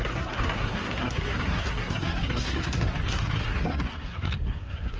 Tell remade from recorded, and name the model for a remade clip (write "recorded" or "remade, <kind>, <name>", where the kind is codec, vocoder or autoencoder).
remade, codec, SNAC